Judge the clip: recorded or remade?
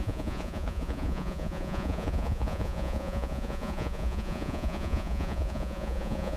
remade